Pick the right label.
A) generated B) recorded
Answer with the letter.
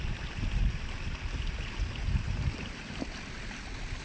B